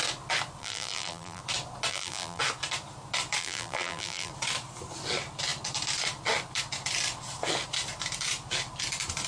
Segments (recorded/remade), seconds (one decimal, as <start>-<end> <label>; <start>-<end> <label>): 0.0-0.6 recorded; 0.6-1.4 remade; 1.4-1.9 recorded; 1.9-2.4 remade; 2.4-3.4 recorded; 3.4-4.3 remade; 4.3-9.3 recorded